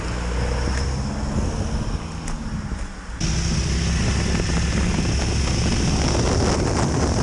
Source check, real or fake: real